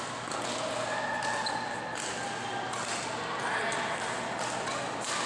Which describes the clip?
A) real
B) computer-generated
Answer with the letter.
A